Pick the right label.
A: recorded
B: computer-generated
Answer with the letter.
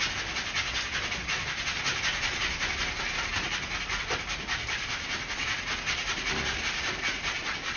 A